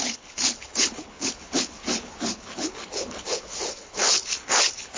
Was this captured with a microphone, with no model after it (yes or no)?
no